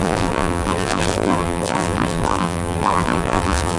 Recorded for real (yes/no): no